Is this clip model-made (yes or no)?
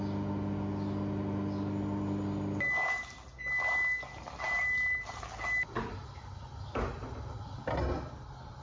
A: no